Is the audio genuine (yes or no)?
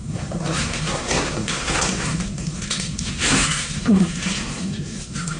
no